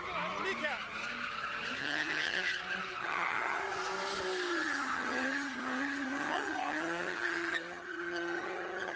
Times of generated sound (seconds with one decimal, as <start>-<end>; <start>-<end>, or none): 1.8-2.5; 3.0-3.6; 4.5-9.0

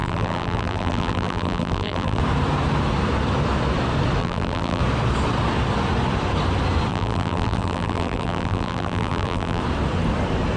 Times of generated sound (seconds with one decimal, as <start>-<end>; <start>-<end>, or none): 0.0-2.2; 4.2-4.8; 6.9-9.6

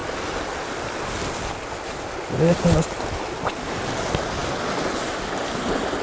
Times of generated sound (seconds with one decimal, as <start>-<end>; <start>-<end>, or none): none

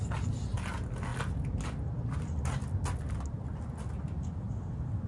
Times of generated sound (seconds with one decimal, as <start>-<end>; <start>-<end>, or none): none